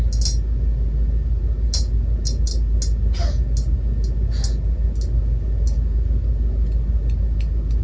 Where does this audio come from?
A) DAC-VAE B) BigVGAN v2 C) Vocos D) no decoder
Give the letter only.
D